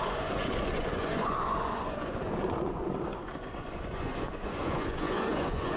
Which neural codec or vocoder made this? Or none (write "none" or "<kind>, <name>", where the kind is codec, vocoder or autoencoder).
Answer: vocoder, Vocos